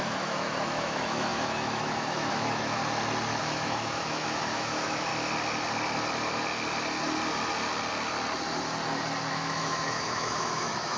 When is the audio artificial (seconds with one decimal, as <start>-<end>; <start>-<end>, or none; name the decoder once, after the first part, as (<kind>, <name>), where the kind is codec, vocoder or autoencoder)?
0.0-2.8 (autoencoder, DAC-VAE); 3.4-5.1; 9.3-11.0